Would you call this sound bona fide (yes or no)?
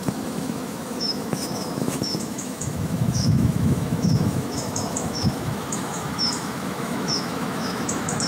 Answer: no